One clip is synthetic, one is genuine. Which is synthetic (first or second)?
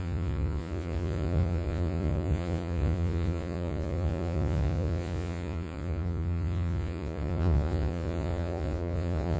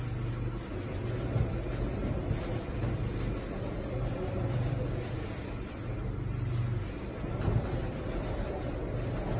first